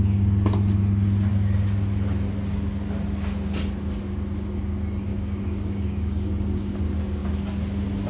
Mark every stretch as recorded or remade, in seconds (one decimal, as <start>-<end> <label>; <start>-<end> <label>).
0.0-5.1 recorded; 5.1-6.8 remade; 6.8-8.1 recorded